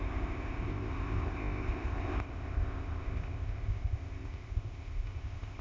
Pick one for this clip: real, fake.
fake